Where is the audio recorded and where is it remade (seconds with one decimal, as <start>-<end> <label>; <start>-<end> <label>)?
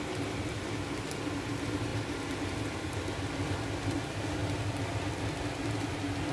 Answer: 0.0-6.3 recorded